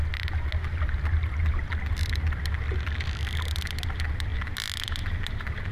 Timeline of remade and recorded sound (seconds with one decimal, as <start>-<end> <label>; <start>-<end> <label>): 0.0-5.7 recorded